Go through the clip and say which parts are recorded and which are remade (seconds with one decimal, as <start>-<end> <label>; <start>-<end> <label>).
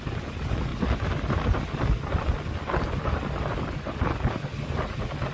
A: 0.0-5.3 recorded